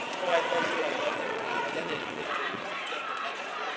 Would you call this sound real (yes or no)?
no